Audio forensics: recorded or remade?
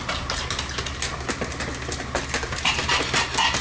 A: recorded